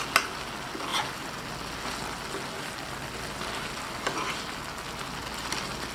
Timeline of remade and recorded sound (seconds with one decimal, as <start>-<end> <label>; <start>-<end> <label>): 0.0-5.9 recorded